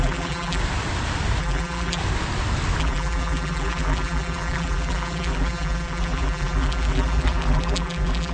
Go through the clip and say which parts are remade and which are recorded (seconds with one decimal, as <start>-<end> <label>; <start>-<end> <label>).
0.0-0.6 remade; 0.6-1.4 recorded; 1.4-2.0 remade; 2.0-2.8 recorded; 2.8-8.3 remade